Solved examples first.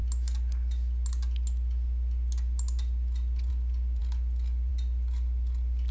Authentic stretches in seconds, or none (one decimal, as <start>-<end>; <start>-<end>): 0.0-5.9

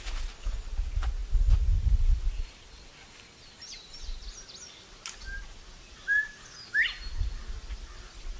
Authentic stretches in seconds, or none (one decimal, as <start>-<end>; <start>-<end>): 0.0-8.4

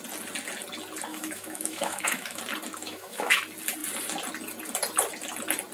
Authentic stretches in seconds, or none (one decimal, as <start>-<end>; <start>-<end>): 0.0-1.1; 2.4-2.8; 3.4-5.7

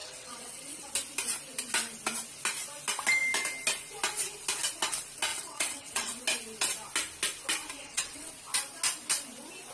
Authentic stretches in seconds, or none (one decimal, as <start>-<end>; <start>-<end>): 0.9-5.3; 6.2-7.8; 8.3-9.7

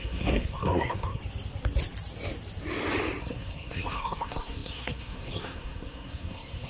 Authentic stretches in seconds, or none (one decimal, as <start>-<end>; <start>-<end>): 1.2-3.2

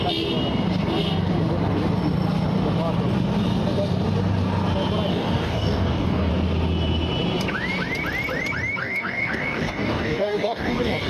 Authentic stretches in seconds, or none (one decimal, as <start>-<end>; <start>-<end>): 0.0-5.1; 6.3-8.8